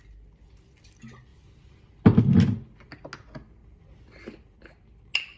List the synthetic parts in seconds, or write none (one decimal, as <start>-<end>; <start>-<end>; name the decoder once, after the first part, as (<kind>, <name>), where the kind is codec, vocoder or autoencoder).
none